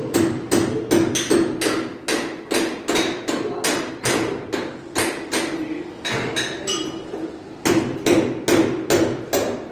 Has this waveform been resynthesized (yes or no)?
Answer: no